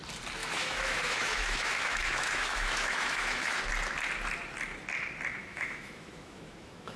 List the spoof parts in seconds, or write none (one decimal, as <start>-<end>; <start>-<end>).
0.4-3.6; 5.4-7.0